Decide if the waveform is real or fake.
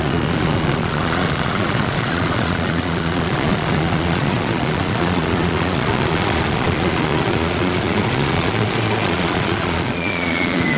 fake